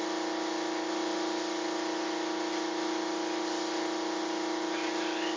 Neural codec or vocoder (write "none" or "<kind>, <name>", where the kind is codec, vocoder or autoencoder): none